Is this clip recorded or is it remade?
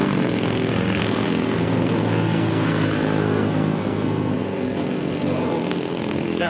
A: remade